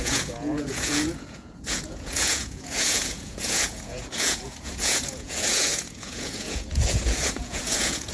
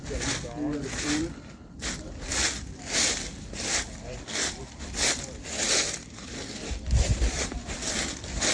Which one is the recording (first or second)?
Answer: second